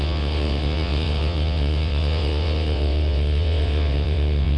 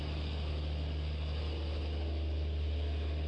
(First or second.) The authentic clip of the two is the second